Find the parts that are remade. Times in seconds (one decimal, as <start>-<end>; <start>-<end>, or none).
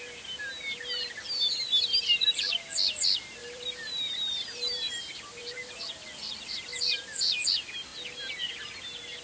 3.4-7.5